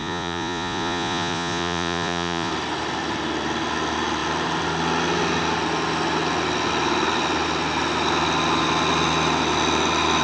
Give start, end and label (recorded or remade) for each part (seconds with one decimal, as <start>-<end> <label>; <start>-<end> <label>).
0.0-2.5 remade; 2.5-10.2 recorded